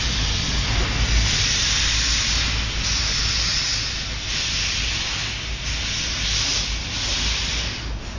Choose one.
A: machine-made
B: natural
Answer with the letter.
B